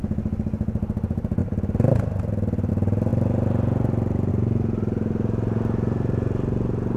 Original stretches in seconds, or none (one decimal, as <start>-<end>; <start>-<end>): 0.0-7.0